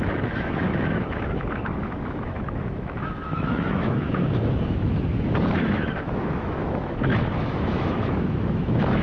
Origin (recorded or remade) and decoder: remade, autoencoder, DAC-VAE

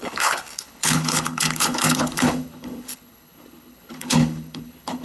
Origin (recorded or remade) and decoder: remade, codec, HILCodec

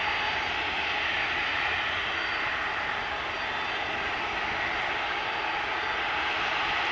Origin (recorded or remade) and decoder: recorded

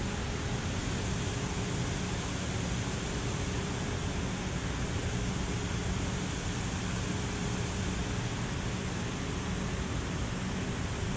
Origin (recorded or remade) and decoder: recorded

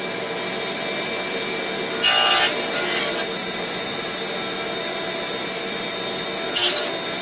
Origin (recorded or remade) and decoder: recorded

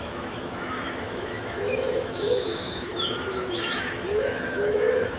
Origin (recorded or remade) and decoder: remade, autoencoder, DAC-VAE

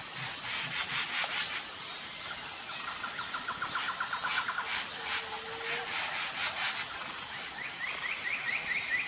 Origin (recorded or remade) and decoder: recorded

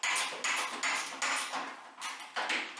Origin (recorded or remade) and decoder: recorded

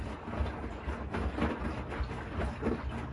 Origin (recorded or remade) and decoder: recorded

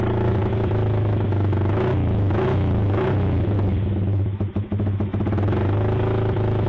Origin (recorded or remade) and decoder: remade, autoencoder, DAC-VAE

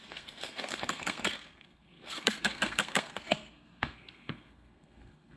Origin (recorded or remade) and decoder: remade, codec, SNAC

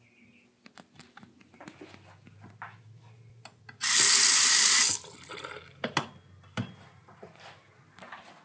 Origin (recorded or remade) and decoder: recorded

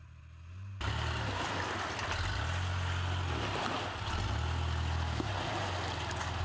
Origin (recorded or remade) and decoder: recorded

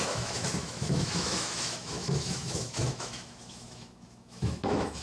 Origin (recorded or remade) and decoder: remade, autoencoder, DAC-VAE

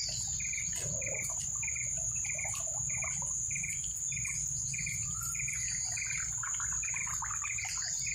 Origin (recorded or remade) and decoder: recorded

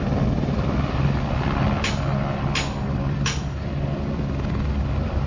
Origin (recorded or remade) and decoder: recorded